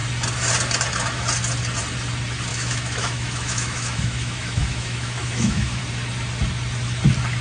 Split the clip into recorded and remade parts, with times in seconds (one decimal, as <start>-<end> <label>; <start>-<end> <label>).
0.0-2.5 recorded; 2.5-5.8 remade; 5.8-7.4 recorded